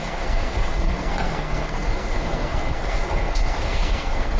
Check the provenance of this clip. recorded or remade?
remade